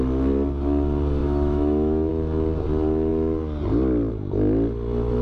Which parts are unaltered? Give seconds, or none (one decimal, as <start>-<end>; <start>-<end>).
0.0-1.2; 2.1-5.2